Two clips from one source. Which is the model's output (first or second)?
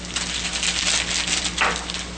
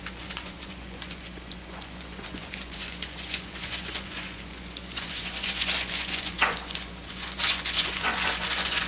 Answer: second